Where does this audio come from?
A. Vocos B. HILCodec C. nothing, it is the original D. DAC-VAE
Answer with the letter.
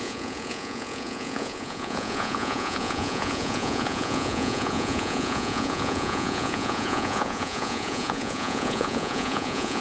A